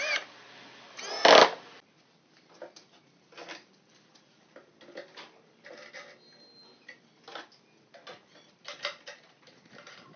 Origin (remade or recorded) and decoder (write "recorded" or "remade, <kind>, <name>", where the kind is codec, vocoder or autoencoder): recorded